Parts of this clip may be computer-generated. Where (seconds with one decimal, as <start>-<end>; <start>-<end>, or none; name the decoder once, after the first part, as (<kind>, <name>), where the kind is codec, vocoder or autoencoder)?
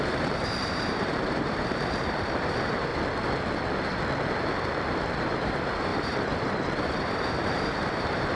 0.0-2.9 (vocoder, BigVGAN v2); 5.0-8.4